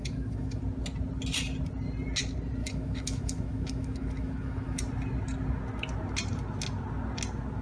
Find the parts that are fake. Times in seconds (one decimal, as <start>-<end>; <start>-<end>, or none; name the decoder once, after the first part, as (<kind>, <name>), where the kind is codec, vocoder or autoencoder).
0.0-0.6 (autoencoder, DAC-VAE); 2.6-4.8